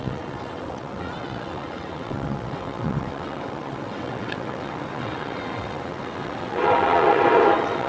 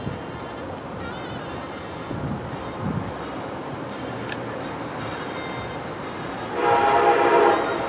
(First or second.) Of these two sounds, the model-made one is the first